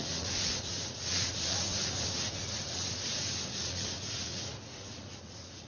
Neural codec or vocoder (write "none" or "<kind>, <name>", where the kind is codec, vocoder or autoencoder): vocoder, Vocos